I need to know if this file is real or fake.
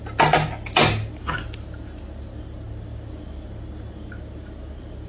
real